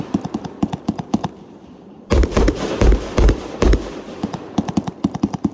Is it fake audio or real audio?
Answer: fake